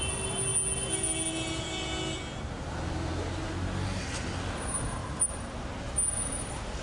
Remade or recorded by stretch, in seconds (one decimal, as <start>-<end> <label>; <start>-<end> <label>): 0.0-6.8 recorded